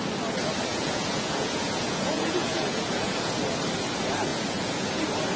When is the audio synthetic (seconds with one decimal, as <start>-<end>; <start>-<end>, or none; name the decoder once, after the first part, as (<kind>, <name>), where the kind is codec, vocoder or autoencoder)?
0.7-3.3 (vocoder, Vocos); 4.3-5.0